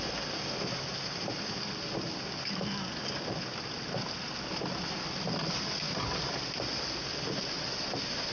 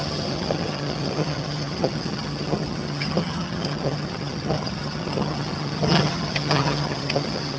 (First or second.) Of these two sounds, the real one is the first